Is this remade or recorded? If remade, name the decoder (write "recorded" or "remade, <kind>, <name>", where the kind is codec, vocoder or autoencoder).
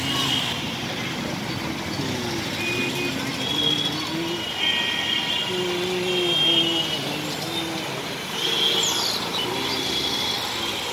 recorded